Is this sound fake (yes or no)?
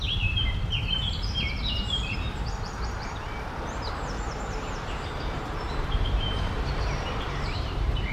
yes